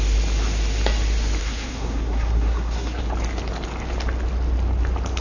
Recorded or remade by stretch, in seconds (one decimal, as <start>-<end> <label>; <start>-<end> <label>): 0.0-1.4 recorded; 1.4-3.0 remade; 3.0-5.2 recorded